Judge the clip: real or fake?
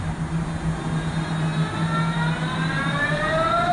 real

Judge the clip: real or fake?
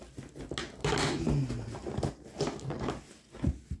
real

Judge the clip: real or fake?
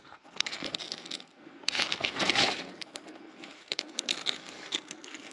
fake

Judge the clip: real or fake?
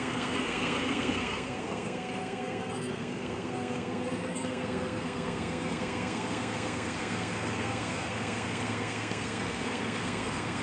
fake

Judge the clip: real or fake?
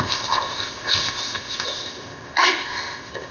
fake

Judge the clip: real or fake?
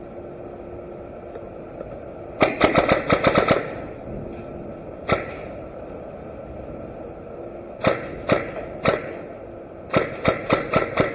real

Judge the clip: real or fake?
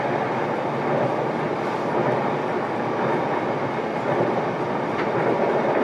real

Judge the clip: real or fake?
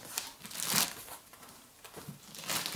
real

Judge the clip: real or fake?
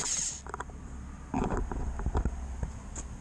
real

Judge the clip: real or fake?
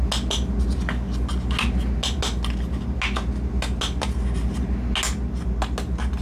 real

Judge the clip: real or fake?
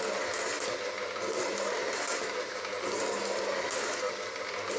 real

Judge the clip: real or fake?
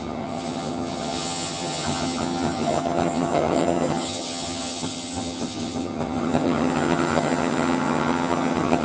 fake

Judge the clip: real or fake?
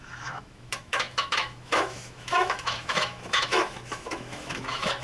fake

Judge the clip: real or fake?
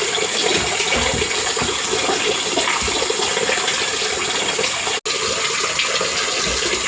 real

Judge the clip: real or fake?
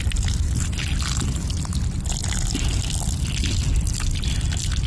real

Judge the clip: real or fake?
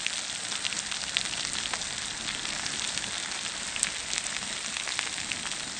real